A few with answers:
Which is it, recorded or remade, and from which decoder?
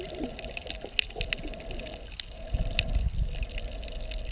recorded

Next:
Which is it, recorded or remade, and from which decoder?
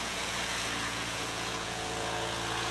remade, vocoder, Vocos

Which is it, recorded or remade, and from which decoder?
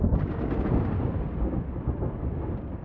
recorded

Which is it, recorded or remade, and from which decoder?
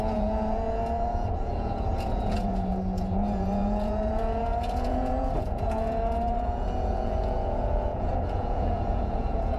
remade, vocoder, Vocos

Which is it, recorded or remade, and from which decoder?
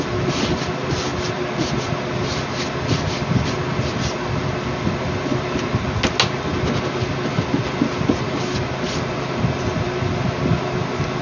recorded